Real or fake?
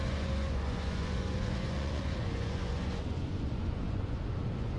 fake